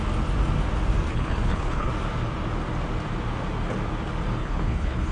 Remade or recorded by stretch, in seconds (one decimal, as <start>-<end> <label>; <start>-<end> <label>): 0.0-1.1 recorded; 1.1-1.9 remade; 1.9-4.4 recorded; 4.4-5.1 remade